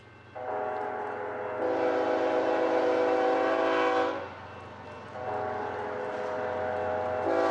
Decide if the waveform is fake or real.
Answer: real